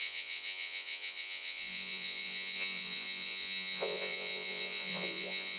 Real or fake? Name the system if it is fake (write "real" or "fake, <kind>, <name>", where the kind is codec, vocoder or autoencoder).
fake, vocoder, Vocos